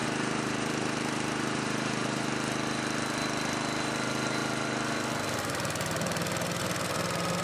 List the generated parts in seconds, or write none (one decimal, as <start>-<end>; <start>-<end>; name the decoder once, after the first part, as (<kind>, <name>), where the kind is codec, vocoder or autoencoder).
0.0-2.3 (vocoder, BigVGAN v2)